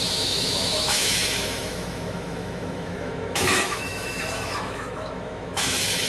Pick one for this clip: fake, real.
fake